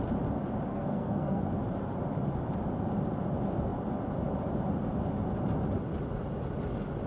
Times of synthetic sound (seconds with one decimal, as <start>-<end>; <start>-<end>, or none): 0.7-1.4

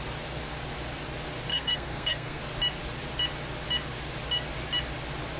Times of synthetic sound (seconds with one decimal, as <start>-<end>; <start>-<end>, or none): 1.5-2.4

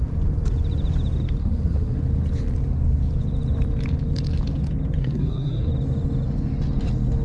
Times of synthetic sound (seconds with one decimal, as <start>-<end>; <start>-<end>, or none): 1.4-2.0; 5.0-5.7

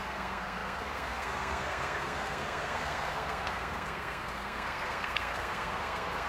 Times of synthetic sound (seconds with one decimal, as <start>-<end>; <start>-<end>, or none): 0.0-6.3